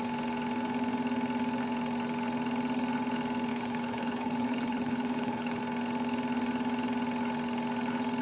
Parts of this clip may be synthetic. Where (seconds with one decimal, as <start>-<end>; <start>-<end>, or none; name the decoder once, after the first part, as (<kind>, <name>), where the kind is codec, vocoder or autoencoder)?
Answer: 3.5-5.6 (codec, HILCodec)